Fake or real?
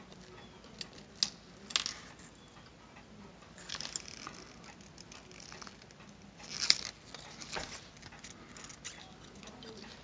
real